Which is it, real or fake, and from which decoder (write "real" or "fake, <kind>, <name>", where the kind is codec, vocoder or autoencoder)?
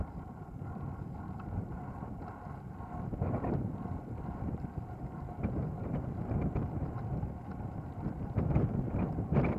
fake, vocoder, BigVGAN v2